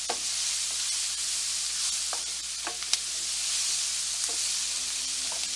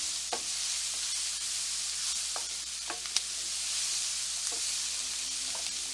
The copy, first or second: second